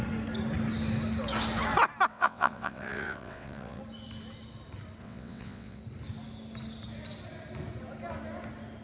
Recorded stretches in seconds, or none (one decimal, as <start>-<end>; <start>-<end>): 0.0-2.1; 3.8-5.0; 5.8-8.8